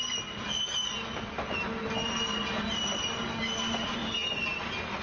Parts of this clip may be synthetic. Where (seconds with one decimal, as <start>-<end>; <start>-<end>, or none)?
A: none